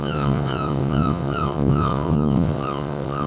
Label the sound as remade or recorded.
remade